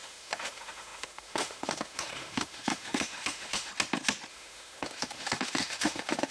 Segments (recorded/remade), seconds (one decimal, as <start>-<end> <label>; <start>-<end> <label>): 0.0-3.7 remade; 3.7-4.3 recorded; 4.3-6.3 remade